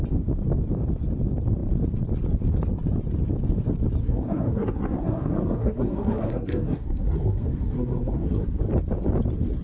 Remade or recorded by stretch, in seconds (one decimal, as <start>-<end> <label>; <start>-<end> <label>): 0.0-4.0 recorded; 4.0-8.6 remade; 8.6-9.6 recorded